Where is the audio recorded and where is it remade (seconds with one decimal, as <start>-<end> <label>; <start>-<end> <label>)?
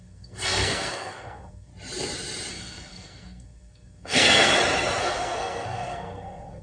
0.0-1.7 remade; 1.7-2.5 recorded; 2.5-4.5 remade; 4.5-5.0 recorded; 5.0-6.6 remade